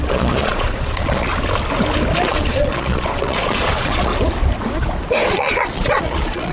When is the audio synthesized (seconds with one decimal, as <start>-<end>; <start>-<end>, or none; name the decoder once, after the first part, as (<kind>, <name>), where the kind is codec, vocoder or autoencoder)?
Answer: 0.0-1.3 (vocoder, Vocos); 2.2-4.1; 5.3-6.5